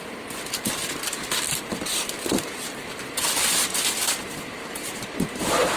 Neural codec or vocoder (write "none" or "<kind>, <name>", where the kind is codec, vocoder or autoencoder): none